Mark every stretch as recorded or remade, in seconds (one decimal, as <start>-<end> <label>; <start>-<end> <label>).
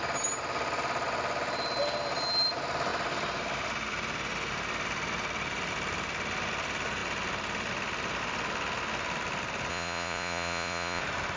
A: 0.0-9.7 recorded; 9.7-11.0 remade; 11.0-11.4 recorded